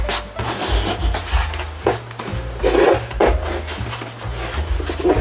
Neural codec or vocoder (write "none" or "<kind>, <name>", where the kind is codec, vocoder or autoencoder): none